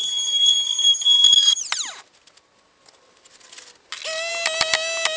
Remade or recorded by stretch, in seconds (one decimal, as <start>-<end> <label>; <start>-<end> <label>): 0.0-5.2 recorded